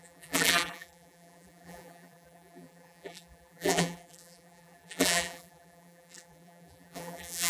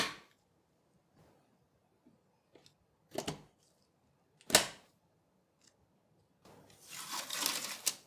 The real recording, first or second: second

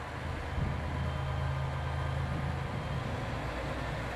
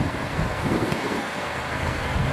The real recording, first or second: first